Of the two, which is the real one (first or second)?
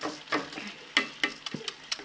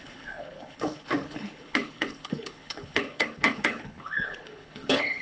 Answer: first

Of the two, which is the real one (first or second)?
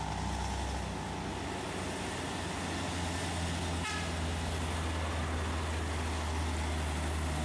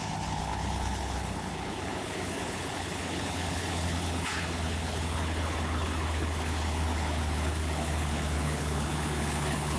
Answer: first